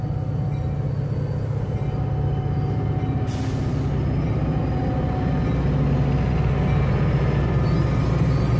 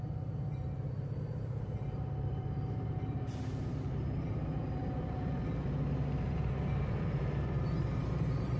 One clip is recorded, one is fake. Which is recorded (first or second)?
first